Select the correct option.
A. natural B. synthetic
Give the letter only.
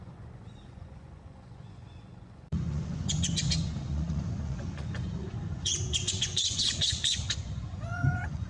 B